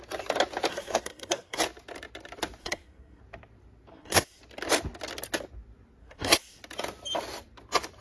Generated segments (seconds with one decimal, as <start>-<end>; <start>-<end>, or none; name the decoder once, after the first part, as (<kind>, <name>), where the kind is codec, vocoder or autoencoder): 0.7-1.6 (codec, SNAC); 2.6-3.2; 3.9-4.4; 6.0-6.6